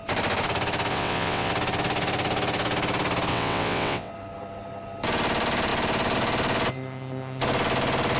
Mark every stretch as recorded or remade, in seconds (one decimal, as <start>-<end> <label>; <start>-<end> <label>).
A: 0.0-0.9 recorded; 0.9-1.5 remade; 1.5-3.3 recorded; 3.3-4.1 remade; 4.1-8.2 recorded